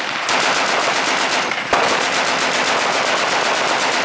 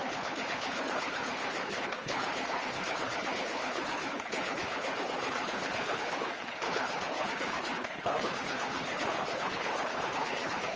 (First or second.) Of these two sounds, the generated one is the second